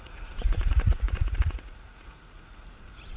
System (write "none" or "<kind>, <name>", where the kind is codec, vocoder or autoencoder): vocoder, Vocos